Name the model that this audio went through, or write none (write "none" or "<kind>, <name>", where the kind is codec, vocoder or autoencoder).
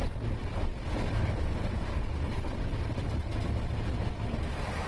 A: none